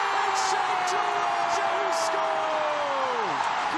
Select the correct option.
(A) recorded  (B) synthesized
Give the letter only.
A